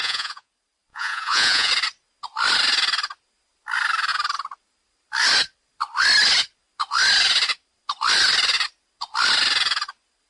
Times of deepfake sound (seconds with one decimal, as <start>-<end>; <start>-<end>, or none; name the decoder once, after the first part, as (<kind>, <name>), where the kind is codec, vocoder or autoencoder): 0.0-0.5 (vocoder, Vocos); 0.9-1.7